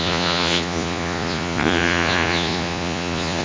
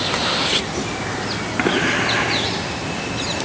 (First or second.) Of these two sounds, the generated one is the first